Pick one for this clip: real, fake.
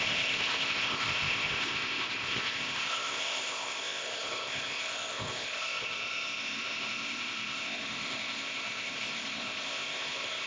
fake